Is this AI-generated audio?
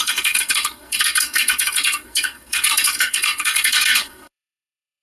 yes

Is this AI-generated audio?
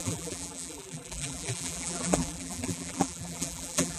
yes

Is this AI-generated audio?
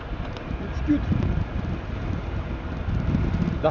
no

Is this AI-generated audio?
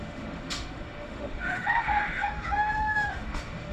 yes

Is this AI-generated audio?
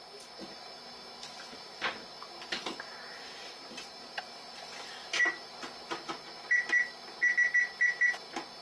no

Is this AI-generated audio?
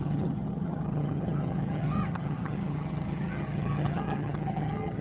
yes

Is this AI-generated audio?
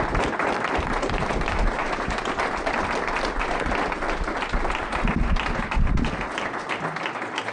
no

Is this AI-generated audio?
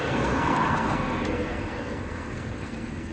yes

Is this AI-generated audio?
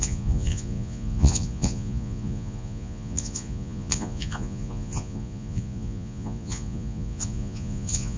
yes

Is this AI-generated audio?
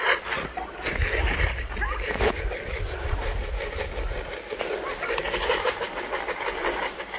no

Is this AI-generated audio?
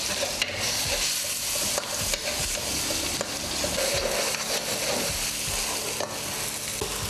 no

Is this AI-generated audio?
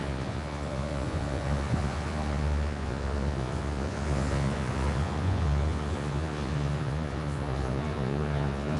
yes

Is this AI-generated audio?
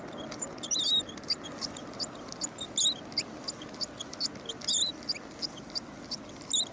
no